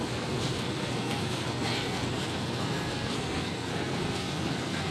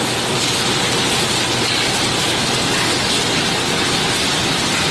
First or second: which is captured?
second